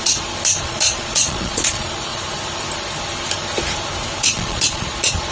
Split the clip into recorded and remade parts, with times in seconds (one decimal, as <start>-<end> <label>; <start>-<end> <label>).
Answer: 0.0-0.6 recorded; 0.6-2.1 remade; 2.1-4.2 recorded; 4.2-5.3 remade